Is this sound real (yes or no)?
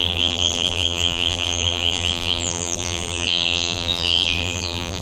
no